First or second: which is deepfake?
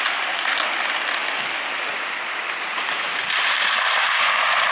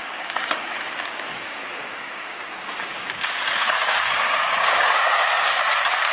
second